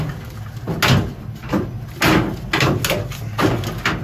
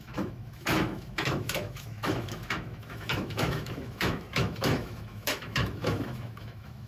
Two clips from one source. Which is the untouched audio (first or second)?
first